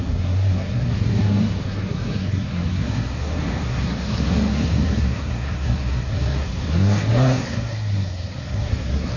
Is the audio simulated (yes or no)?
yes